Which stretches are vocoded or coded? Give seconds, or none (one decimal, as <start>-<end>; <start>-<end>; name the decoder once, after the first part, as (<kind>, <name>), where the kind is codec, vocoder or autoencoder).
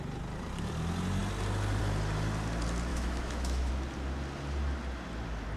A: 2.9-3.7 (autoencoder, DAC-VAE)